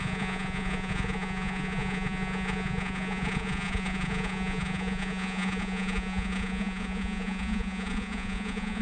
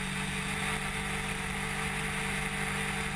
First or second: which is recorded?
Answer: second